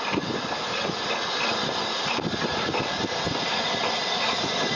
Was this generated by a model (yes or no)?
no